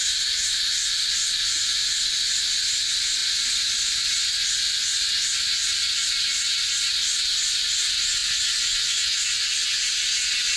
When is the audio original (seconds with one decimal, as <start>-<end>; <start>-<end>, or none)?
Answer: 0.0-10.6